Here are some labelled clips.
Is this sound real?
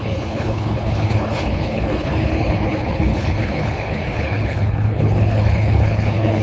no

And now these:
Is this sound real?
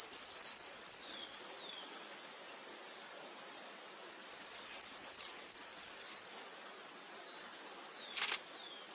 yes